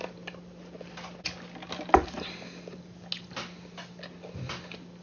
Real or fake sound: real